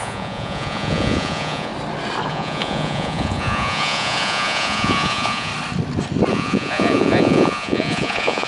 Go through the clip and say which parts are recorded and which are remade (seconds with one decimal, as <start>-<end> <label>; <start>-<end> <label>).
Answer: 0.0-1.7 remade; 1.7-2.3 recorded; 2.3-5.5 remade; 5.5-6.3 recorded; 6.3-8.5 remade